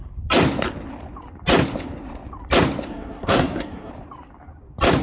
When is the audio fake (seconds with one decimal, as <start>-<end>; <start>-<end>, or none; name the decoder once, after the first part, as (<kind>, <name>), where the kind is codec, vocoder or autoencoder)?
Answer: 2.9-3.9 (codec, SNAC)